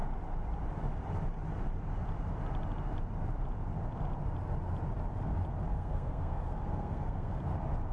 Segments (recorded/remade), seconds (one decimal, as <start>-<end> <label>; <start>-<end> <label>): 0.0-5.7 recorded; 5.7-7.4 remade; 7.4-7.9 recorded